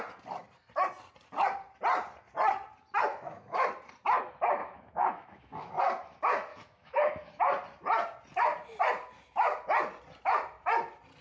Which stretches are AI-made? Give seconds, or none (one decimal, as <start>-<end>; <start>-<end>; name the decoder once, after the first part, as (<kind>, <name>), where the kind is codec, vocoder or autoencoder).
3.1-3.7 (autoencoder, DAC-VAE); 4.6-5.8; 6.5-7.4